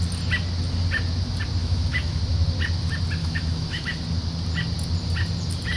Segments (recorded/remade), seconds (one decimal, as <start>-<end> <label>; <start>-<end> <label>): 0.0-1.6 recorded; 1.6-2.2 remade; 2.2-3.2 recorded; 3.2-4.0 remade; 4.0-5.8 recorded